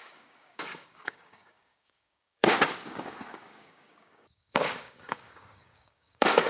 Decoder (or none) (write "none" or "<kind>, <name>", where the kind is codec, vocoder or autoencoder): codec, DAC